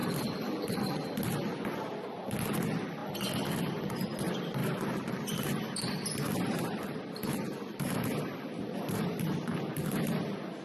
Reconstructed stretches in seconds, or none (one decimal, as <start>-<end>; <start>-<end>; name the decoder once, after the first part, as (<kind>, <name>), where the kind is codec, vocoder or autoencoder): 0.0-0.8 (vocoder, BigVGAN v2); 7.7-9.1

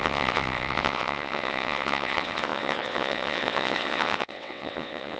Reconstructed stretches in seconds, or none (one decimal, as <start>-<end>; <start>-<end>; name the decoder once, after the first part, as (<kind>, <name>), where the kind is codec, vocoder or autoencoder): 0.0-5.2 (vocoder, WaveNeXt)

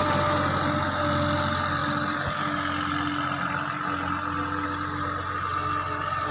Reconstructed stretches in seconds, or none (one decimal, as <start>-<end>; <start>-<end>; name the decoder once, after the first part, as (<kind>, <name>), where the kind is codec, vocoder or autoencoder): 1.8-2.4 (vocoder, BigVGAN v2)

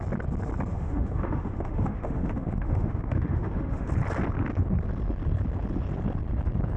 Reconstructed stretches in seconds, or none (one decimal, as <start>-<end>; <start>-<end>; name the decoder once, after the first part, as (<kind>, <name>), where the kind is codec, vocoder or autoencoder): 0.7-3.9 (autoencoder, DAC-VAE)

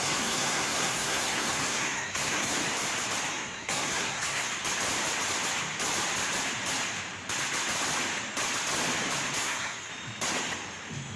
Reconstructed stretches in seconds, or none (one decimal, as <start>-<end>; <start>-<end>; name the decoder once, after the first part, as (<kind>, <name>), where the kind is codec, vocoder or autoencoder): 0.0-2.6 (codec, SNAC); 3.3-4.5; 9.4-9.9